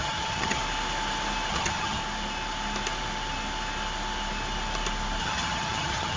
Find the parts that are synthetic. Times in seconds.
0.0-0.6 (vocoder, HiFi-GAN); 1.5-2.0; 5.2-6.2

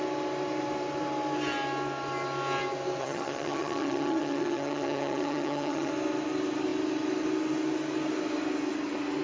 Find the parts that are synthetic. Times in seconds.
3.0-5.9 (vocoder, HiFi-GAN)

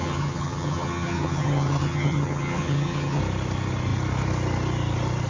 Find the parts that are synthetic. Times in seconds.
0.0-3.2 (vocoder, HiFi-GAN)

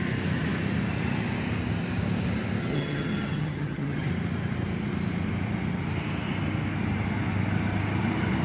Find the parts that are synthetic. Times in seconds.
2.6-4.1 (vocoder, HiFi-GAN)

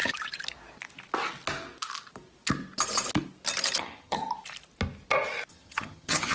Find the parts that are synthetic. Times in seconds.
3.8-4.2 (vocoder, HiFi-GAN); 5.5-6.3